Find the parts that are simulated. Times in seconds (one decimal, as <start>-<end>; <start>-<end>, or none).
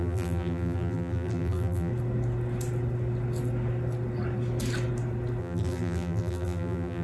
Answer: 0.0-1.9; 5.4-7.0